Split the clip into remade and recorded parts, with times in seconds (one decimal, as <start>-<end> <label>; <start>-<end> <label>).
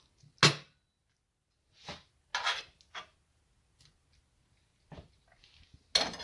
0.0-6.2 recorded